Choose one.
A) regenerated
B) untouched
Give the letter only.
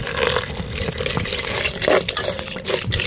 B